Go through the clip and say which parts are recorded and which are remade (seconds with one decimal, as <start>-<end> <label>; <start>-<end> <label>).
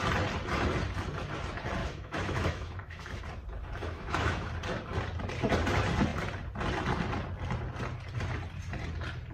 0.0-1.8 recorded; 1.8-3.2 remade; 3.2-3.8 recorded; 3.8-4.5 remade; 4.5-9.3 recorded